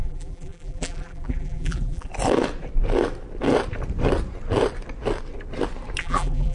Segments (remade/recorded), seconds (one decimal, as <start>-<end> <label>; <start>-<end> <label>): 0.0-2.1 remade; 2.1-6.0 recorded; 6.0-6.5 remade